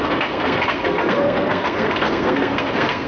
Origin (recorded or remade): remade